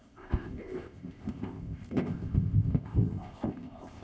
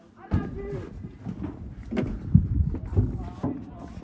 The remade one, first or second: first